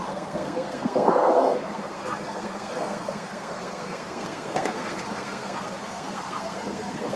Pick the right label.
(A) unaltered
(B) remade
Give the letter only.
B